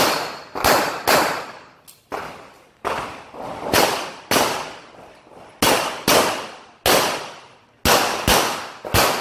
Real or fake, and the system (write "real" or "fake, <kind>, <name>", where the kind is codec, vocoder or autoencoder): real